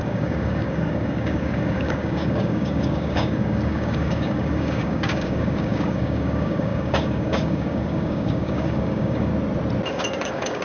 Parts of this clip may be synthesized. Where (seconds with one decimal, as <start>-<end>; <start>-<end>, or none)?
0.0-9.3; 9.9-10.6